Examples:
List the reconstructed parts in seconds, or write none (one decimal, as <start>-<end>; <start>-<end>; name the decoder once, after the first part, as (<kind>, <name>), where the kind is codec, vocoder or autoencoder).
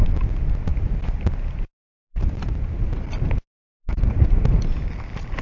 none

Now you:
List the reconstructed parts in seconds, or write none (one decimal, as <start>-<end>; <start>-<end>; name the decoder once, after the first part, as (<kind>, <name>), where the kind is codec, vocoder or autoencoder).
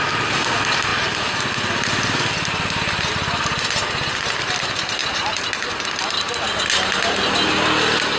none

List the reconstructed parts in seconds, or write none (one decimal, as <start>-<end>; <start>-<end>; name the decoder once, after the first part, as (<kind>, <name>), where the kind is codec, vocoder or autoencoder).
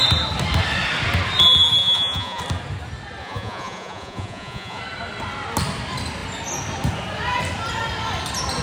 1.8-2.4 (vocoder, Vocos); 3.2-4.8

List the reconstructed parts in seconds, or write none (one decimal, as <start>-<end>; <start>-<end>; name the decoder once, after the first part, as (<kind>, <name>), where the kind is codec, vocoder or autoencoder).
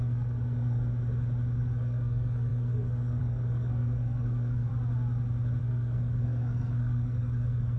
0.0-0.9 (codec, SNAC); 1.6-4.7; 5.6-7.8